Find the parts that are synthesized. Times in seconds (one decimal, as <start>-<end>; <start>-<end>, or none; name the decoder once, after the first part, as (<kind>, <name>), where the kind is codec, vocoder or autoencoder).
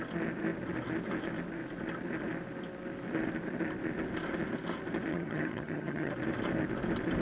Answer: 5.1-6.1 (vocoder, HiFi-GAN)